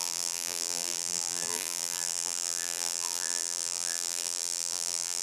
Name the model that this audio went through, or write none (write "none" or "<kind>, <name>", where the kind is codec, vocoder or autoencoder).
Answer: vocoder, BigVGAN v2